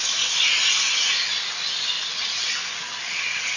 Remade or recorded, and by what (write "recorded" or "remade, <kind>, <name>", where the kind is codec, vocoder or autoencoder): recorded